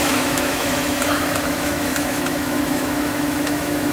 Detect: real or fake fake